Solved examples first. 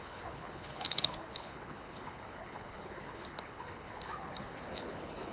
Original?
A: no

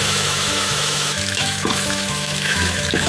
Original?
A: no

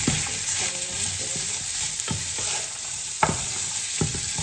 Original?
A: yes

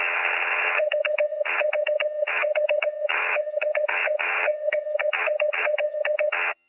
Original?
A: no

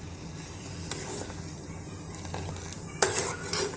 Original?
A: yes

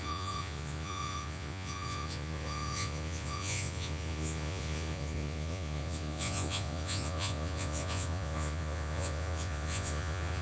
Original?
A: no